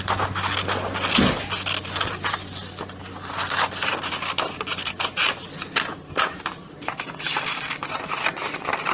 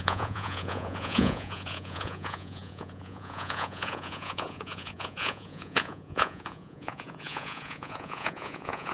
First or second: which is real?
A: first